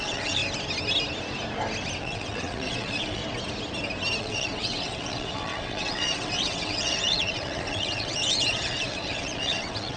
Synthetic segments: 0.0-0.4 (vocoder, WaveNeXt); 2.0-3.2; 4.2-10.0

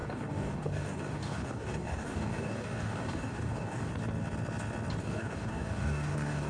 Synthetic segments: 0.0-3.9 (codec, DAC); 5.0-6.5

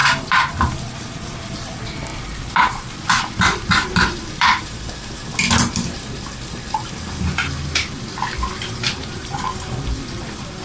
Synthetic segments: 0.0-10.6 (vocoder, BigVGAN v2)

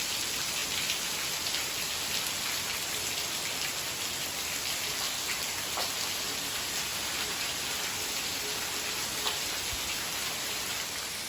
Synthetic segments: none